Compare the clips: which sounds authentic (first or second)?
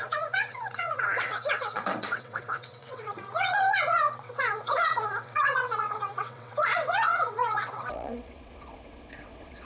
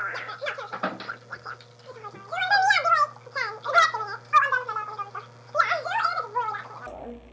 second